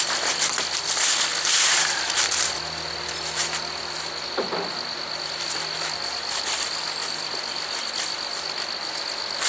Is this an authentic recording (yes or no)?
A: no